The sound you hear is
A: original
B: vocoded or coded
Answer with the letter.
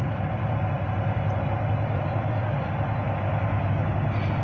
A